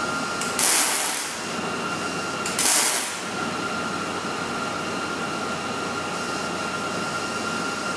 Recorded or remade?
recorded